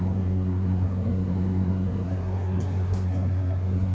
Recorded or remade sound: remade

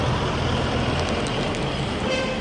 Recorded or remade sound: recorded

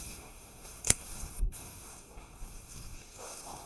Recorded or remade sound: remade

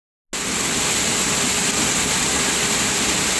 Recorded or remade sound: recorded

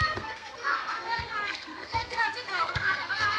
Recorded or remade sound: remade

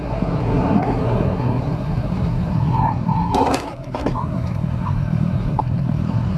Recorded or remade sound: remade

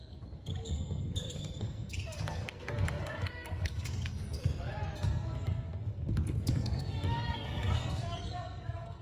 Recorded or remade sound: remade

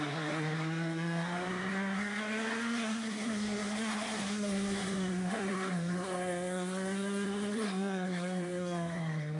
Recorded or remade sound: remade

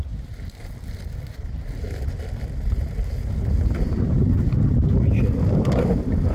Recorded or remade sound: recorded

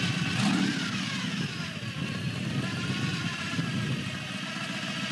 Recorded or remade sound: recorded